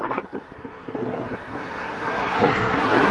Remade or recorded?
remade